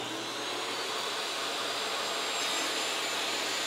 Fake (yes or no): no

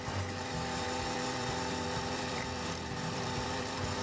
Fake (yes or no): yes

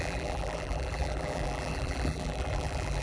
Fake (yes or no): yes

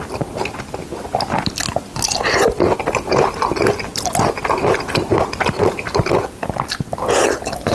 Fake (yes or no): no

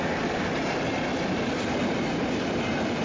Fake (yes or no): no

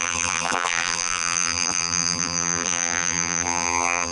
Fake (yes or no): yes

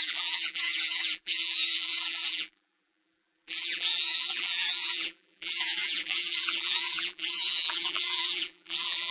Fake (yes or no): yes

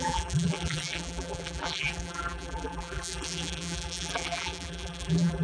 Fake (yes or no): yes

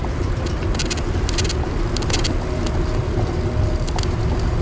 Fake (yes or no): no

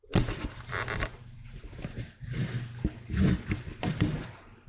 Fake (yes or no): no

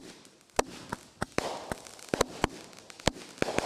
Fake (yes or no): yes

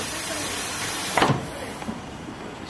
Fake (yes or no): yes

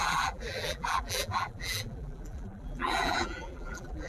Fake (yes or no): yes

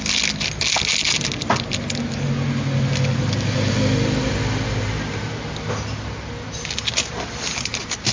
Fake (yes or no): no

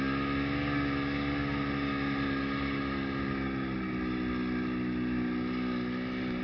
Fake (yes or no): no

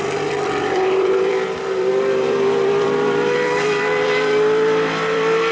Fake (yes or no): yes